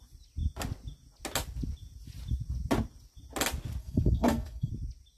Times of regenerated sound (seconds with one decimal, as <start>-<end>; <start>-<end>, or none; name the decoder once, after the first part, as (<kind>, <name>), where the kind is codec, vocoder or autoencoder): 3.8-4.7 (codec, SNAC)

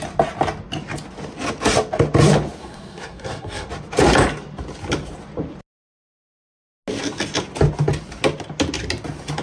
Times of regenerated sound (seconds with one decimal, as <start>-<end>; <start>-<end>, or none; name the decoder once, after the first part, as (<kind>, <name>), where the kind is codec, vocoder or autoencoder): 2.6-3.7 (codec, SNAC)

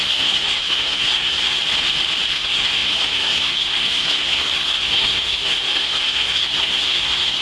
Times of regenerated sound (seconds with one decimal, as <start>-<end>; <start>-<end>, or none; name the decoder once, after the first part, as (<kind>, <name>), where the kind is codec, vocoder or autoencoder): 0.0-1.6 (codec, SNAC); 2.3-7.4

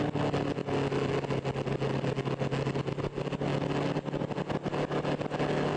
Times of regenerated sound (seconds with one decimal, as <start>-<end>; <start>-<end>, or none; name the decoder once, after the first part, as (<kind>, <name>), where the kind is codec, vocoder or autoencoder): none

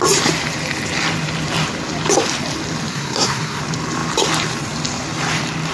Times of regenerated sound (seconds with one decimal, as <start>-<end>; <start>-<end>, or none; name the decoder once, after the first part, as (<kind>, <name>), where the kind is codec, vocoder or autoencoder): 2.9-3.6 (codec, SNAC)

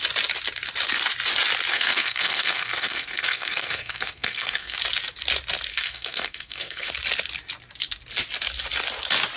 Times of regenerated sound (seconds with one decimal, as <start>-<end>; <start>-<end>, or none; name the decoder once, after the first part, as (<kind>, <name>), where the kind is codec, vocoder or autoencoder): 1.7-4.8 (codec, SNAC); 5.7-6.9